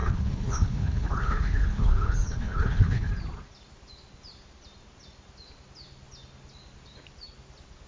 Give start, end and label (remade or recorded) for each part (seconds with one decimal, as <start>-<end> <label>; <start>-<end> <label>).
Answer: 0.0-3.1 remade; 3.1-7.9 recorded